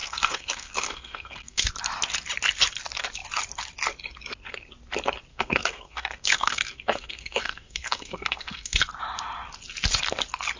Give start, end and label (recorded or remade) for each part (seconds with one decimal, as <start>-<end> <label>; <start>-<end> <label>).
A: 0.0-1.7 remade; 1.7-5.3 recorded; 5.3-8.8 remade; 8.8-10.6 recorded